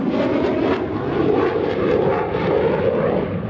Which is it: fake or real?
real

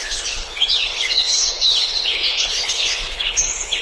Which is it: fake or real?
fake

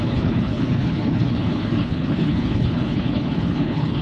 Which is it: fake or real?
fake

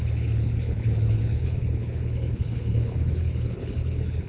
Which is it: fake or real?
fake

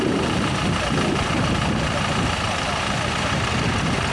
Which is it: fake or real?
real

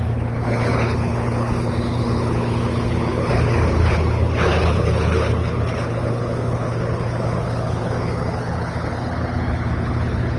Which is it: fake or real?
fake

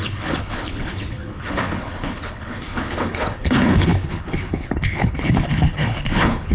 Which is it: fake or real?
fake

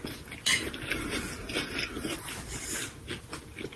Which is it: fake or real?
real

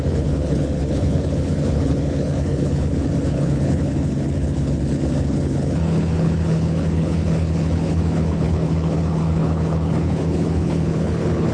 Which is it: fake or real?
fake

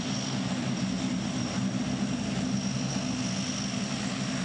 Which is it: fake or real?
real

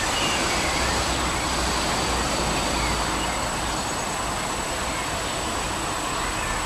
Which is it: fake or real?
real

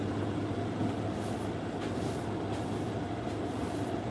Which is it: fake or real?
real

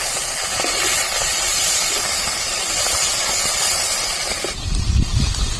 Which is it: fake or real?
real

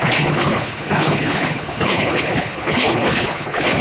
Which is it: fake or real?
fake